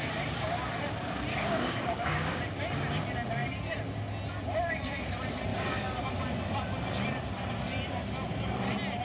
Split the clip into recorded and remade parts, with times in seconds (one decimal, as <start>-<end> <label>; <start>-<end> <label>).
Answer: 0.0-1.3 recorded; 1.3-2.4 remade; 2.4-5.5 recorded; 5.5-6.1 remade; 6.1-9.0 recorded